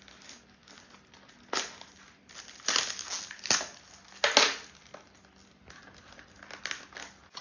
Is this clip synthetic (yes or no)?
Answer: no